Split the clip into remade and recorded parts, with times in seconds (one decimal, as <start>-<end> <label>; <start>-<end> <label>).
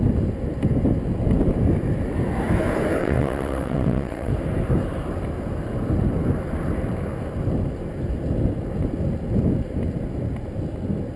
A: 0.0-3.0 recorded; 3.0-4.3 remade; 4.3-11.2 recorded